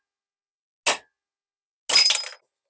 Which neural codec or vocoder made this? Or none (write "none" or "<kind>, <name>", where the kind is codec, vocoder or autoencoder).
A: none